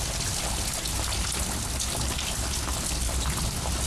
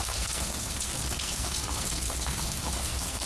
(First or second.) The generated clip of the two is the second